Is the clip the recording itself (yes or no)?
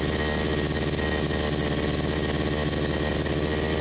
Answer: yes